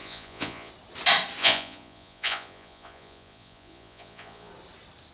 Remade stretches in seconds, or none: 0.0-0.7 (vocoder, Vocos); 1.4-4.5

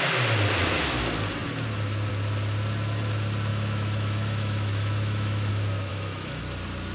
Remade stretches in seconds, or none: 3.5-5.5 (autoencoder, DAC-VAE); 5.9-6.4

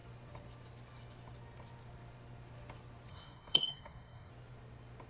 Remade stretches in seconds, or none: 3.1-4.3 (codec, SNAC)